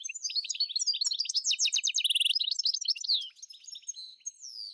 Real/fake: real